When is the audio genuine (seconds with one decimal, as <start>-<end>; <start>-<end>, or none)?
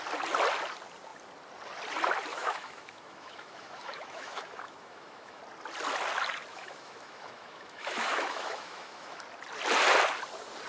0.0-2.3; 5.4-6.5; 9.2-10.7